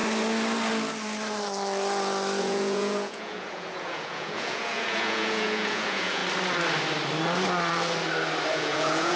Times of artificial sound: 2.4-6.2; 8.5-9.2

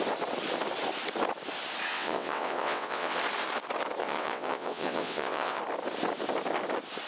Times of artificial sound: 1.9-3.2; 4.0-5.6

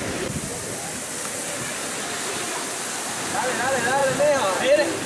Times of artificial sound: none

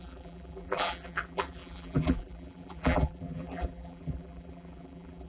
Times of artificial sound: 0.0-5.3

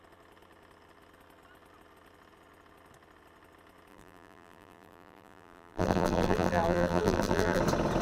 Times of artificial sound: 3.9-7.6

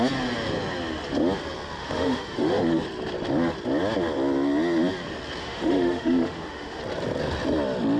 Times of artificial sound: 1.8-2.6; 5.4-6.8